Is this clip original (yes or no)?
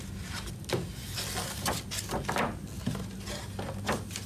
yes